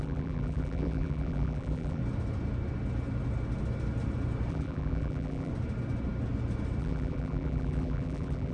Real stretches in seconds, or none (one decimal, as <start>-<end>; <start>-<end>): 2.0-4.5; 5.5-6.8